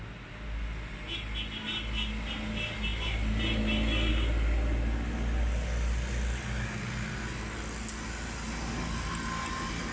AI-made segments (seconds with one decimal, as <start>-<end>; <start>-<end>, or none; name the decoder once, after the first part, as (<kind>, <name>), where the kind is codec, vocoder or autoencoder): none